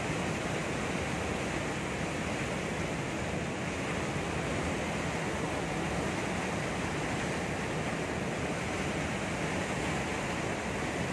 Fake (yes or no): no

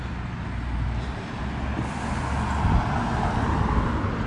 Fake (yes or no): no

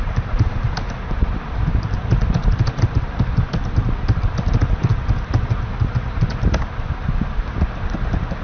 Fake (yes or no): no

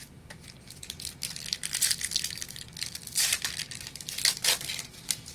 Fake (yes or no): no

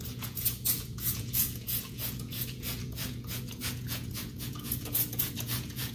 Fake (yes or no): yes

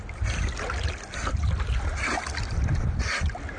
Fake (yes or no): no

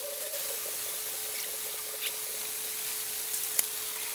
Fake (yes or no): no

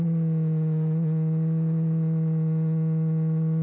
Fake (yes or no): no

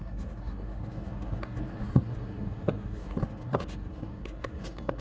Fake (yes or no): yes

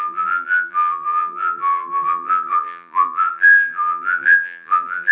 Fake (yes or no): yes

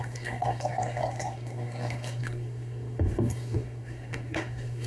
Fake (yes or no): yes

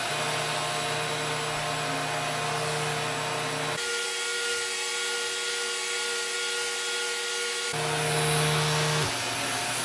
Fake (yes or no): no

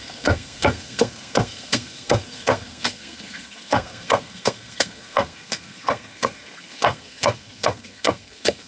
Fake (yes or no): yes